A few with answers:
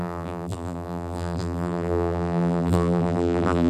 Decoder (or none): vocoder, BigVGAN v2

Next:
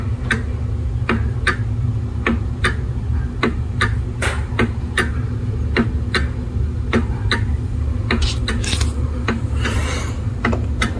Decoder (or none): none